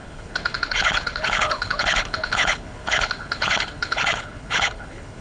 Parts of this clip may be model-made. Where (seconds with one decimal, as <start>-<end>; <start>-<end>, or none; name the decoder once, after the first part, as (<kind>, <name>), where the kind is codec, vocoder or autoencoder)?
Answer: 0.0-5.2 (codec, HILCodec)